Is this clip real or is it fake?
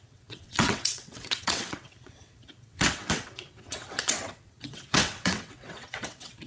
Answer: fake